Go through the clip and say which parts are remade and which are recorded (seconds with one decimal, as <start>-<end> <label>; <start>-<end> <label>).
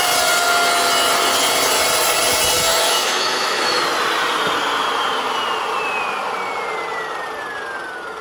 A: 0.0-2.7 recorded; 2.7-3.8 remade; 3.8-8.2 recorded